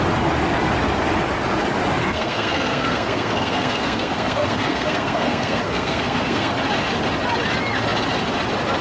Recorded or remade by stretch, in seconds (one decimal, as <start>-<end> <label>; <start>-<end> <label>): 0.0-2.0 recorded; 2.0-6.5 remade; 6.5-8.8 recorded